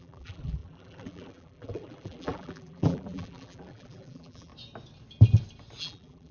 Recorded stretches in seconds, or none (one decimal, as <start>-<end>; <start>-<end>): 4.5-5.8